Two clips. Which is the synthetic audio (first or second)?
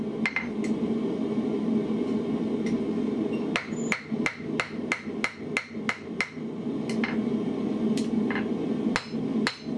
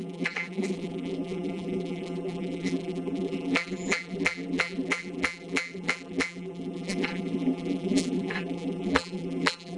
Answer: second